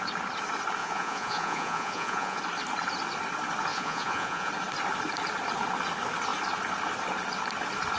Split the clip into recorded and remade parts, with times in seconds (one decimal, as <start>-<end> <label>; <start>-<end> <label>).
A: 0.0-0.8 recorded; 0.8-2.4 remade; 2.4-3.7 recorded; 3.7-4.5 remade; 4.5-8.0 recorded